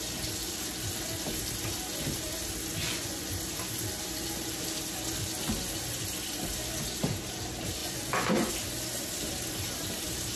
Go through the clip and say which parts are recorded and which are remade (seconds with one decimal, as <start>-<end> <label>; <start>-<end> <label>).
0.0-2.8 recorded; 2.8-3.4 remade; 3.4-7.8 recorded; 7.8-8.5 remade; 8.5-10.4 recorded